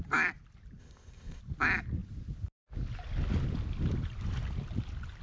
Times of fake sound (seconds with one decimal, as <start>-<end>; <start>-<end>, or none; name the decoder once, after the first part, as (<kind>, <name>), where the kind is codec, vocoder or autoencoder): 0.8-1.4 (codec, ZipCodec)